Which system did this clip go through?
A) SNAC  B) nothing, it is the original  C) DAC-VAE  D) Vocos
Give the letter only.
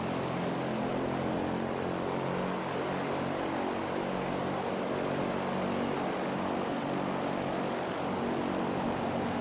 B